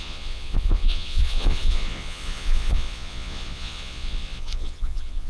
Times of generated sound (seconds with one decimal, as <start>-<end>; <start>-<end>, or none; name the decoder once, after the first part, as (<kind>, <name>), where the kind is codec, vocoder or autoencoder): 0.0-5.3 (vocoder, Vocos)